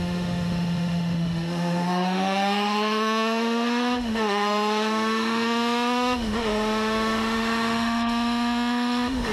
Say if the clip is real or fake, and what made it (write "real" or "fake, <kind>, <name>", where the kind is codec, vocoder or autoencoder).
fake, autoencoder, DAC-VAE